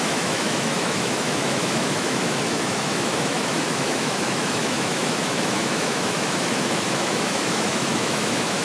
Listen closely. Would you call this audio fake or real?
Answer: fake